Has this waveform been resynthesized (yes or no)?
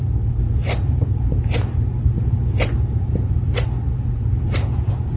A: yes